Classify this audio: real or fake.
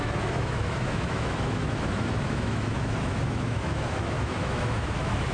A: fake